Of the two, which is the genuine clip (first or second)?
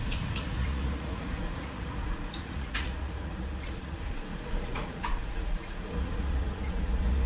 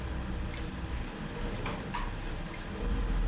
second